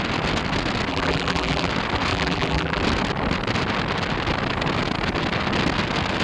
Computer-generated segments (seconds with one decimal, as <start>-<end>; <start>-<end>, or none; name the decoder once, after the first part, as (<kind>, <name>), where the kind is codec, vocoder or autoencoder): 0.9-1.7 (vocoder, BigVGAN v2); 2.1-2.8